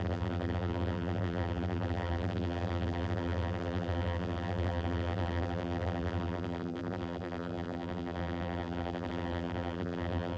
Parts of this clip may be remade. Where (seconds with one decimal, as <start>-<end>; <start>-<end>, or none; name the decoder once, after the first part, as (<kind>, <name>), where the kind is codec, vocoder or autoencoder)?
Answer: 0.0-10.4 (vocoder, BigVGAN v2)

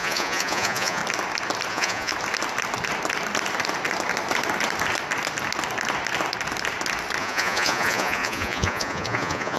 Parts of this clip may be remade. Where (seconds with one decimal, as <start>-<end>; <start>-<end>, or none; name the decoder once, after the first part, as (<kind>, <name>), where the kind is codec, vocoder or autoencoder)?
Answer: 0.0-1.0 (vocoder, Vocos); 1.7-2.1; 7.2-9.6